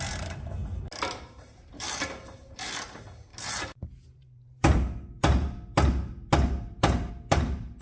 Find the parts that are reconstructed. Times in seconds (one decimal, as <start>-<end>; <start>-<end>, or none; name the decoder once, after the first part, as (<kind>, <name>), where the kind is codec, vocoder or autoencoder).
0.0-0.6 (vocoder, BigVGAN v2); 1.1-7.8